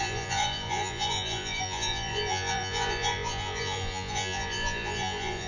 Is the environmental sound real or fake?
fake